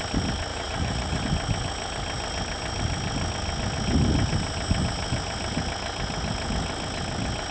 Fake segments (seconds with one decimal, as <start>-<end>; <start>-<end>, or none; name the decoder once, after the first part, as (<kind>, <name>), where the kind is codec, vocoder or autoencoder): 0.5-1.2 (vocoder, Vocos)